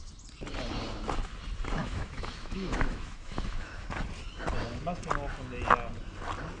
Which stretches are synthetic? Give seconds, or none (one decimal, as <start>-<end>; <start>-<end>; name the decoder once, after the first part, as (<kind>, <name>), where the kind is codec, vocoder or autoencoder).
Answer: 1.8-3.9 (autoencoder, DAC-VAE)